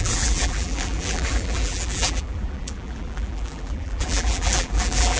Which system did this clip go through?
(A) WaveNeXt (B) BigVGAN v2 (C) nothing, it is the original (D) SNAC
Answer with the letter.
B